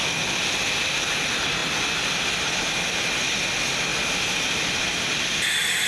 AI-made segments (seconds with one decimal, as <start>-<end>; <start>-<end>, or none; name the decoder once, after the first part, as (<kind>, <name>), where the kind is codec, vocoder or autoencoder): none